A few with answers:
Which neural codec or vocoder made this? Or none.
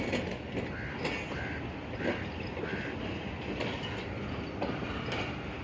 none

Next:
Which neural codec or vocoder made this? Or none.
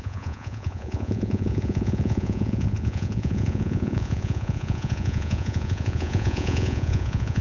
vocoder, Vocos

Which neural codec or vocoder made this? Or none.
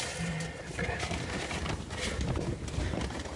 none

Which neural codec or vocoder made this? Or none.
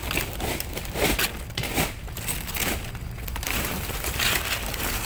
none